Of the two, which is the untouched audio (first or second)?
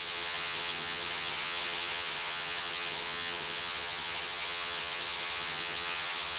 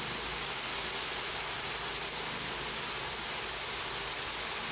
second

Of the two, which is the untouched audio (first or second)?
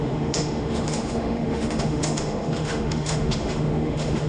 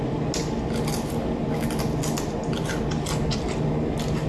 second